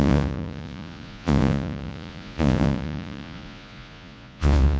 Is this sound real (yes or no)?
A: no